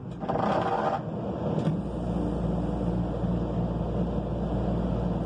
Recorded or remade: recorded